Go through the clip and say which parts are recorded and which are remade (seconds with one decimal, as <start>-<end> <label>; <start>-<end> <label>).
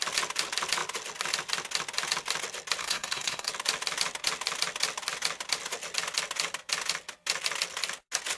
0.0-2.8 recorded; 2.8-3.5 remade; 3.5-8.4 recorded